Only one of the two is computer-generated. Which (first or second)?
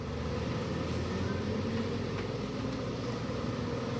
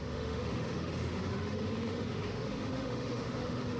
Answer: second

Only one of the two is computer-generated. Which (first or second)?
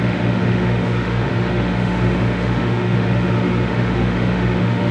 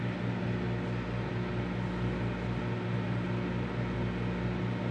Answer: first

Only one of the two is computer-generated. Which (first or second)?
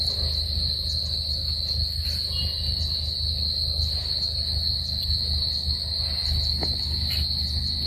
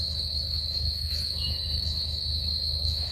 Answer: second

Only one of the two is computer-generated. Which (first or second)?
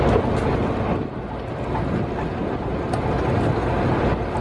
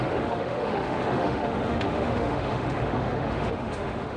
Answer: second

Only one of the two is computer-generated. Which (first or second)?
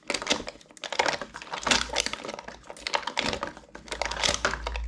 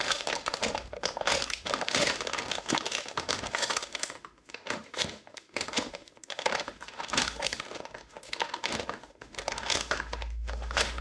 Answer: second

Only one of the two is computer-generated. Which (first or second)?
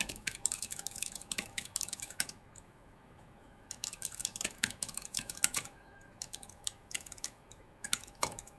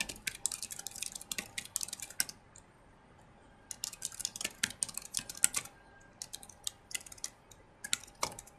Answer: first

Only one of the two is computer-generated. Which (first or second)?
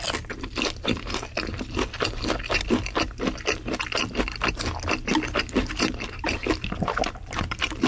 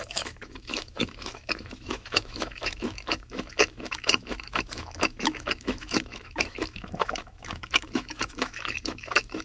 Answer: second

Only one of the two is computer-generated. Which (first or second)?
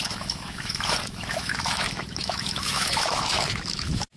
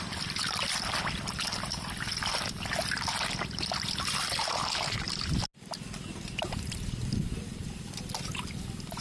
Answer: first